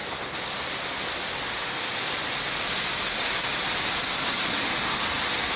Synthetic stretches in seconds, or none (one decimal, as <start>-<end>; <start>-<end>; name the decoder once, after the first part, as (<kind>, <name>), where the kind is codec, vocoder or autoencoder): none